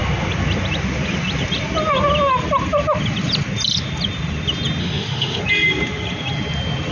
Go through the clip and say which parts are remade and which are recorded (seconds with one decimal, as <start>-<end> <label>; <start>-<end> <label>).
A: 0.0-4.8 recorded; 4.8-5.4 remade; 5.4-6.9 recorded